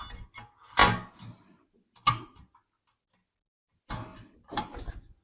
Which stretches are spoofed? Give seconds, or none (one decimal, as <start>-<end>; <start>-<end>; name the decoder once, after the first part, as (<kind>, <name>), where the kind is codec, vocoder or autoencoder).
4.1-5.2 (vocoder, BigVGAN v2)